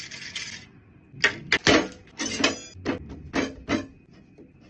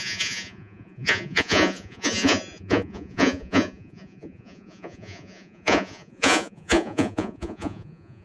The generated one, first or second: second